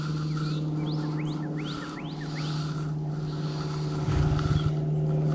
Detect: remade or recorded recorded